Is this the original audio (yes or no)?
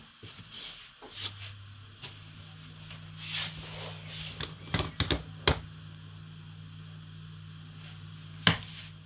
yes